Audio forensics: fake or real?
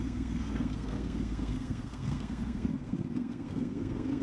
fake